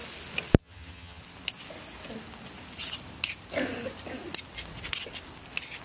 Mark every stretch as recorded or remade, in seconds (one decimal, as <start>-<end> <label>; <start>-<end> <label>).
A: 0.0-0.6 recorded; 0.6-1.2 remade; 1.2-5.8 recorded